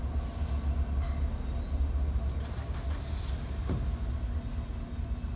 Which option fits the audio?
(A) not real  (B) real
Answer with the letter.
B